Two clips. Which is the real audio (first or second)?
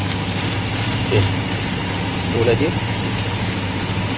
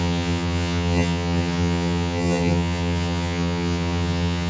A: first